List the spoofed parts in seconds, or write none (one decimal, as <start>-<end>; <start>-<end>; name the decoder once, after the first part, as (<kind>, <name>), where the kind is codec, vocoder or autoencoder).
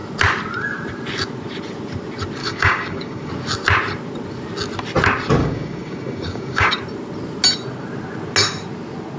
2.4-3.3 (codec, DAC); 5.4-6.7